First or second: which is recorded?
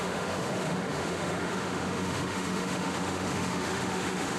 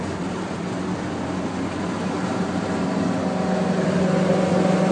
second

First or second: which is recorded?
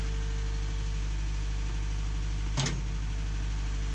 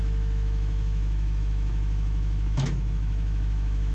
first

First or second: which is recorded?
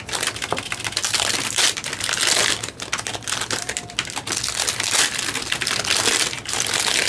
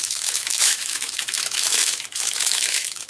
first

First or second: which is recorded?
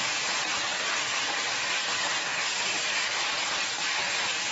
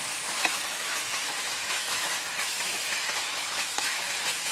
first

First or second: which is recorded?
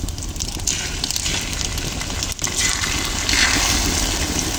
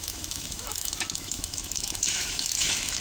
first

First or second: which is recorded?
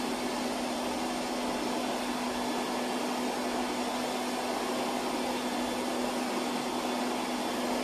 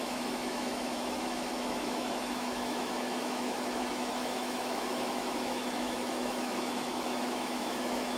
first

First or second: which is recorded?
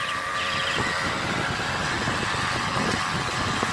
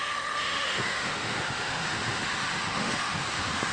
first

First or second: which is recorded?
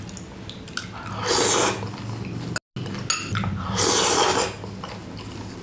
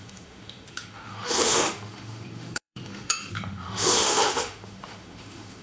first